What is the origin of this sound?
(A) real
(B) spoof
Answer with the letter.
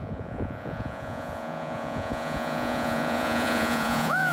B